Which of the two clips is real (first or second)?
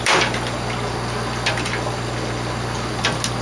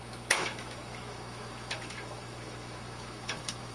first